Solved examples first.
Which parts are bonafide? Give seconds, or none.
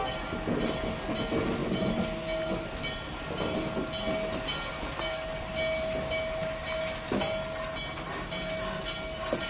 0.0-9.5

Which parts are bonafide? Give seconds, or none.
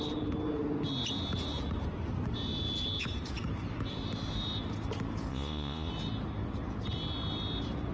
0.0-5.3; 5.9-7.9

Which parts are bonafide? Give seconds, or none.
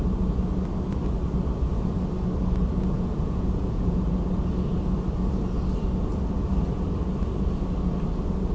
0.0-2.7; 4.1-8.5